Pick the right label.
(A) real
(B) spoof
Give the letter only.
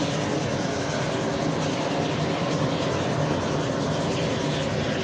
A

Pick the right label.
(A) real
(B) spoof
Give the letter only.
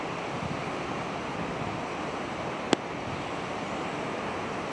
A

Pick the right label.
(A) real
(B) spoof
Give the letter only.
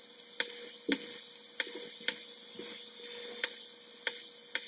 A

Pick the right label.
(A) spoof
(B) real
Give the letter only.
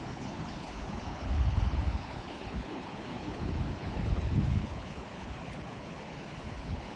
A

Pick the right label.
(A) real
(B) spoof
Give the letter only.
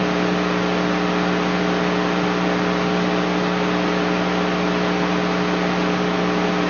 A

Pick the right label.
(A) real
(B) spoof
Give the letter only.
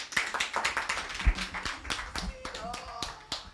A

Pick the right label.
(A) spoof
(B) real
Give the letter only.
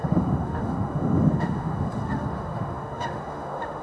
A